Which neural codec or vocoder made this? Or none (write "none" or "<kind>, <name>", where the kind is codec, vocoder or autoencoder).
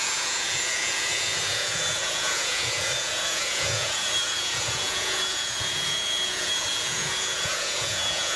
vocoder, Vocos